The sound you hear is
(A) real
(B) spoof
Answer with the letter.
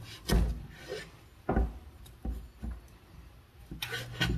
A